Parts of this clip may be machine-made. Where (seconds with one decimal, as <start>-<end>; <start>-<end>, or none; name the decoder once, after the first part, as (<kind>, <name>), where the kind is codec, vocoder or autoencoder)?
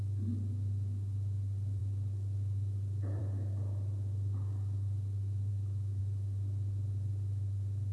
5.5-6.0 (autoencoder, DAC-VAE)